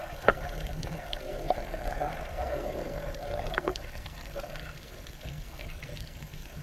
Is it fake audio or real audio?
fake